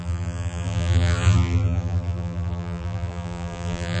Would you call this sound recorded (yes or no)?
no